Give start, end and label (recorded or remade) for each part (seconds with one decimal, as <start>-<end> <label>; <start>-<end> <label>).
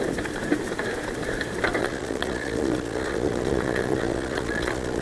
0.0-1.8 recorded; 1.8-5.0 remade